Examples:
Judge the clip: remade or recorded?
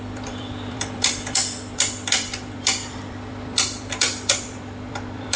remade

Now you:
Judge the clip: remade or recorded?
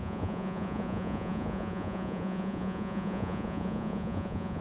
remade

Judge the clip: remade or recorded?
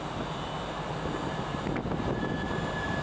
recorded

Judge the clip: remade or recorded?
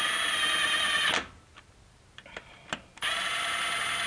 recorded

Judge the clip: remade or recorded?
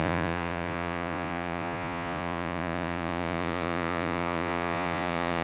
remade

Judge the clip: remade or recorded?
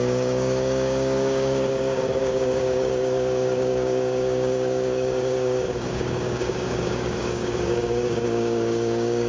remade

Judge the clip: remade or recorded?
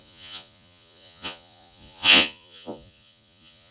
remade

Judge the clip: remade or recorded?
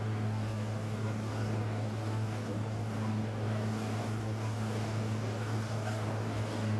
remade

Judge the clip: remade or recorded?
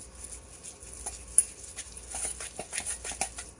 recorded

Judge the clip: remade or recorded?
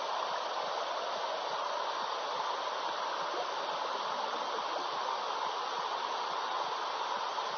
recorded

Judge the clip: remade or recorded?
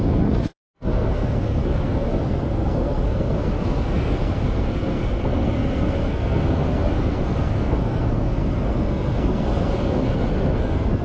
remade